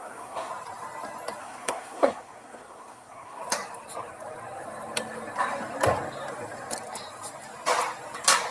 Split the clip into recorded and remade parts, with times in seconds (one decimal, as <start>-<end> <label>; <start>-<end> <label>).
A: 0.0-0.5 remade; 0.5-1.4 recorded; 1.4-3.4 remade; 3.4-8.5 recorded